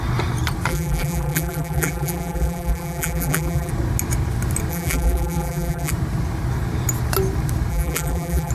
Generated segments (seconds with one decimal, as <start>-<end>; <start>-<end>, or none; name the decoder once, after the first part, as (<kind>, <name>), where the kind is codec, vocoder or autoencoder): 0.7-3.7 (vocoder, BigVGAN v2); 4.7-5.9; 7.7-8.5